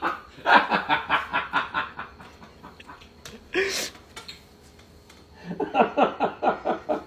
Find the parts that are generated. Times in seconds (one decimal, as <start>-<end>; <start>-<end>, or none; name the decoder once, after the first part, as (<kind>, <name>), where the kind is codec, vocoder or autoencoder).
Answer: none